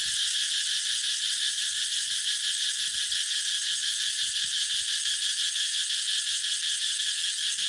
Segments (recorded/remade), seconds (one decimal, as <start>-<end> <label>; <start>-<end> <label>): 0.0-7.7 recorded